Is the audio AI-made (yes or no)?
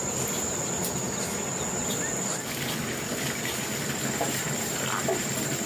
no